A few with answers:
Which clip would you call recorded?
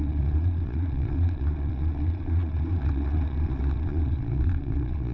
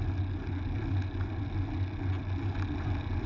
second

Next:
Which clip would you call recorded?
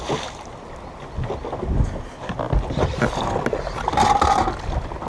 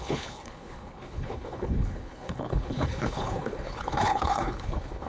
first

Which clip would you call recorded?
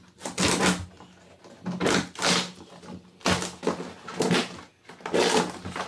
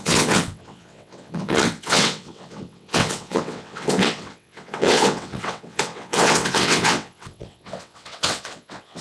first